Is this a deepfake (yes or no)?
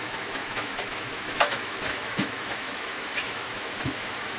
yes